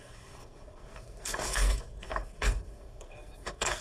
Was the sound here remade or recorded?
remade